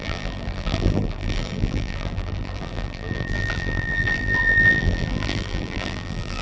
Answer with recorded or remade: remade